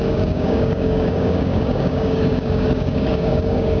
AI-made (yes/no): yes